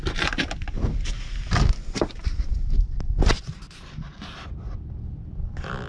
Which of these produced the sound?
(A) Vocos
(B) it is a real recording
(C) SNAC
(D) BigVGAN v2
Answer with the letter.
B